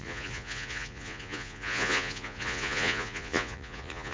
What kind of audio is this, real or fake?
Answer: fake